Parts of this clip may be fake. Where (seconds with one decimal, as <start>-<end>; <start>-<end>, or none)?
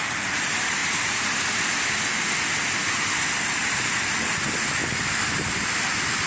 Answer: none